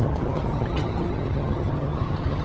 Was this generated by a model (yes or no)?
yes